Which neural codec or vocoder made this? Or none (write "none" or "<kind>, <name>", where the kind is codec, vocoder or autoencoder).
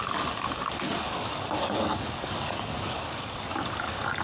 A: codec, DAC